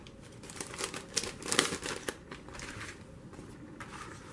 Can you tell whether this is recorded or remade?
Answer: recorded